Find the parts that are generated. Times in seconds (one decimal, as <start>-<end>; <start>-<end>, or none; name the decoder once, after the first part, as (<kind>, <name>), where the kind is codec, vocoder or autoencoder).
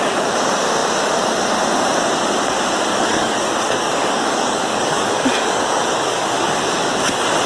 2.9-6.5 (codec, DAC)